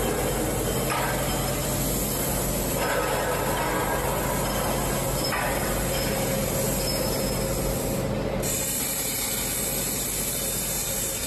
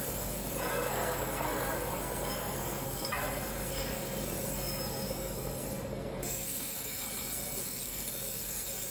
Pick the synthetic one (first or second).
second